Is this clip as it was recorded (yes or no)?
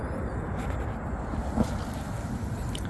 yes